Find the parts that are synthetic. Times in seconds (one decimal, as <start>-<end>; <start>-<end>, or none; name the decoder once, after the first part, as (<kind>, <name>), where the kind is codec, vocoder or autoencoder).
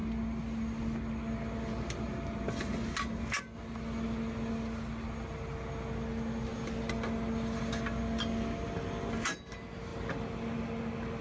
none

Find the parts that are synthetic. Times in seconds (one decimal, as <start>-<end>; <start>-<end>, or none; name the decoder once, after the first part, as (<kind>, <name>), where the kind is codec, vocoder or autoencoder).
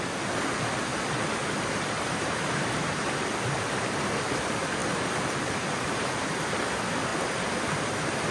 0.9-3.1 (vocoder, BigVGAN v2)